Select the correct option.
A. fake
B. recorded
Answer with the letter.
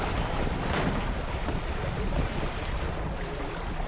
B